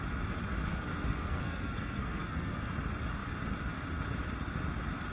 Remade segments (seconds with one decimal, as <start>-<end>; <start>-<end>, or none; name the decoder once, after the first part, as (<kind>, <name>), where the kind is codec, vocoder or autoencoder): 0.7-2.7 (codec, SNAC)